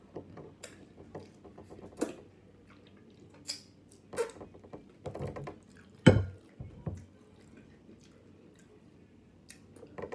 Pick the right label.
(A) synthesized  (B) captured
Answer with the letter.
B